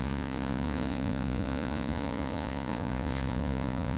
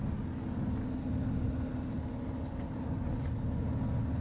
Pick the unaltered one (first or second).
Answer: second